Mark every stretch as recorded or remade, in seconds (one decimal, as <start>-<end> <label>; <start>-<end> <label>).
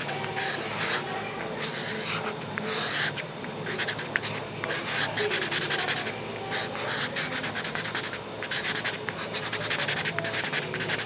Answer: 0.0-11.1 recorded